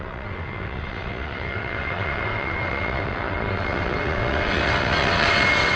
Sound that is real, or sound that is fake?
fake